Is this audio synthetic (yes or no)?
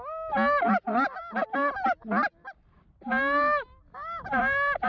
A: no